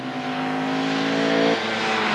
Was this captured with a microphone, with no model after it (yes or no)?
yes